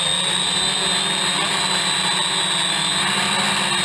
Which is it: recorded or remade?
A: recorded